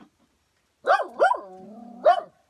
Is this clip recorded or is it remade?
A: recorded